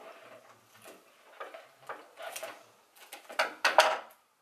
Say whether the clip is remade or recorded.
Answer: recorded